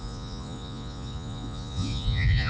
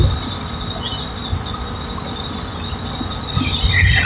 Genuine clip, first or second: second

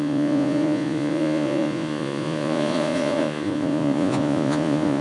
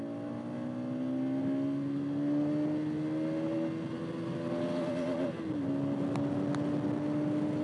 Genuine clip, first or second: second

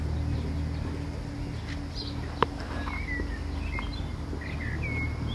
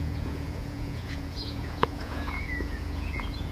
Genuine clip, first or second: first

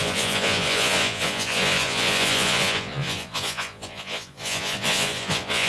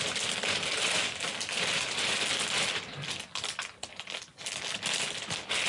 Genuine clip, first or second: second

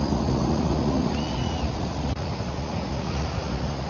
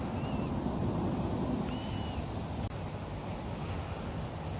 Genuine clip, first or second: second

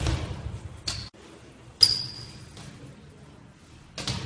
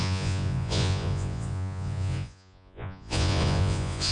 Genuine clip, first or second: first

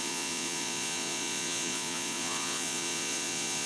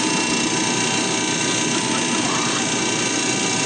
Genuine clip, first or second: second